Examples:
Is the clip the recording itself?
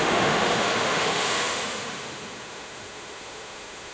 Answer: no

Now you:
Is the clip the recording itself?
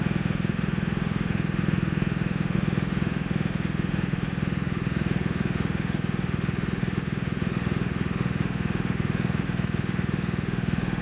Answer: no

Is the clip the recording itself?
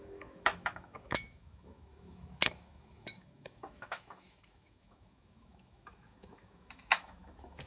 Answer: no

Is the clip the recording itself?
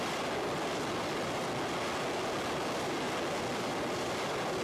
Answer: yes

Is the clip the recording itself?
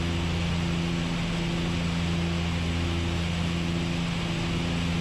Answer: yes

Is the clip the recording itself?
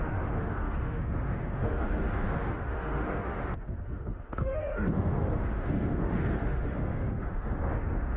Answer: no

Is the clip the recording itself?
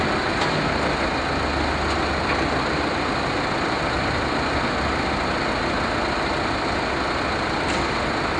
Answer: yes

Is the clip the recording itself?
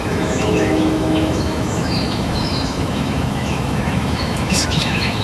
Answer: no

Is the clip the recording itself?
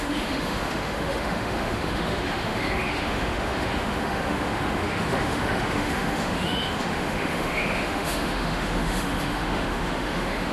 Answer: no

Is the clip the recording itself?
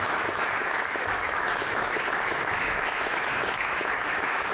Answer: no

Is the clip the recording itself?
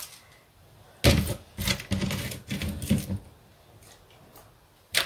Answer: yes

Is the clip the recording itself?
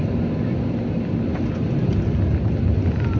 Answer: yes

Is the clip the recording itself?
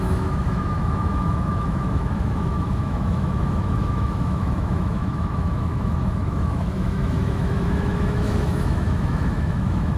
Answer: no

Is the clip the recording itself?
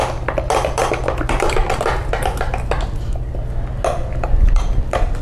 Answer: yes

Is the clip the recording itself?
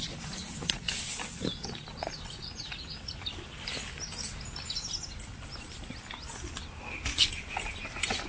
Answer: yes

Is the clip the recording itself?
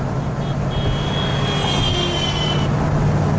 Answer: yes